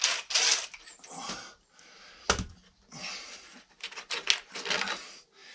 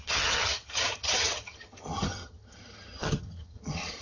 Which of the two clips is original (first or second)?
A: first